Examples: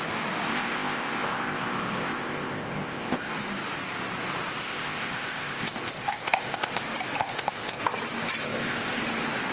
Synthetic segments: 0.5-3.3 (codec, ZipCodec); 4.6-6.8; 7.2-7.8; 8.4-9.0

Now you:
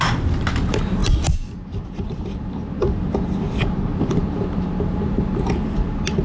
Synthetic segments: none

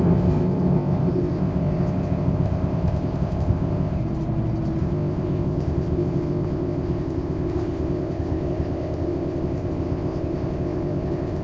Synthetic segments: 0.0-4.0 (codec, ZipCodec); 4.8-11.4

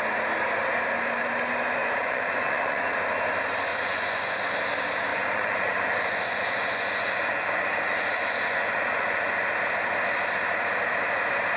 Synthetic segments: 1.8-2.9 (vocoder, Vocos); 3.7-4.4; 5.1-9.5

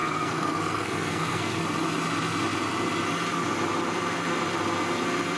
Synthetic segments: 0.0-1.6 (codec, SNAC)

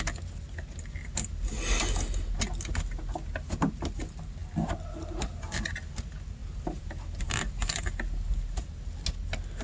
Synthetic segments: 6.4-7.6 (vocoder, BigVGAN v2)

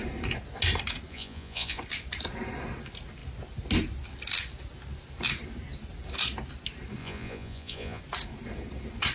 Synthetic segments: 1.1-1.8 (vocoder, Vocos); 7.0-8.0

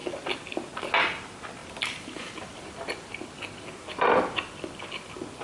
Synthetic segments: 1.6-4.8 (vocoder, BigVGAN v2)